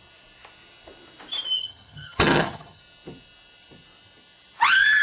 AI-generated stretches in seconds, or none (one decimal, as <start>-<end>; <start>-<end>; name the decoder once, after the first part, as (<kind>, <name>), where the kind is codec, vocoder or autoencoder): 1.6-2.8 (vocoder, HiFi-GAN)